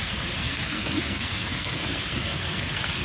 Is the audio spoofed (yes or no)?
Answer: yes